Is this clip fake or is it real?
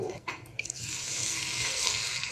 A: fake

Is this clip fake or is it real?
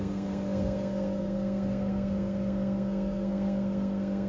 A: fake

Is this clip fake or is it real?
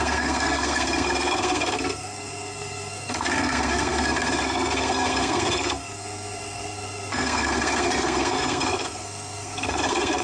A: fake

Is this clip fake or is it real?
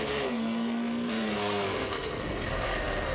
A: fake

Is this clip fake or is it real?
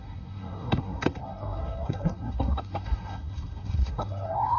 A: fake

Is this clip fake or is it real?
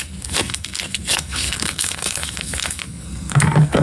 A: fake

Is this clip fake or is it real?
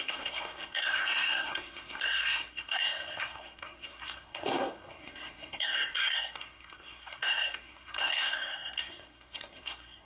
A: fake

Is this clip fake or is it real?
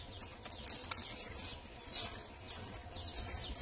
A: real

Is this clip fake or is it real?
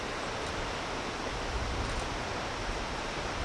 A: real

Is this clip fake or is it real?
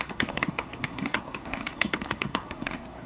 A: fake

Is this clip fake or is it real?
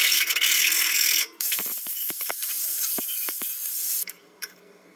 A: fake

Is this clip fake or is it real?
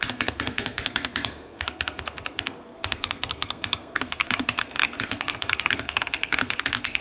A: fake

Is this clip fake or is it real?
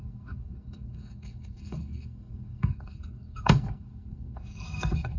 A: fake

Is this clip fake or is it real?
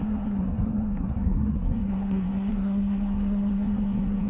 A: fake